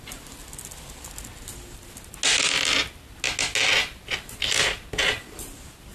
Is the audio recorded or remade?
recorded